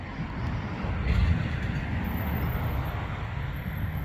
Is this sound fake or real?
real